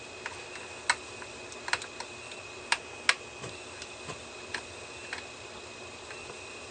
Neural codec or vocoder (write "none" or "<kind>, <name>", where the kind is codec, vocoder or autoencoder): none